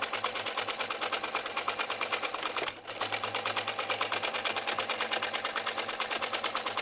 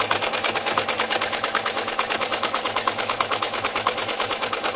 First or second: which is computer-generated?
second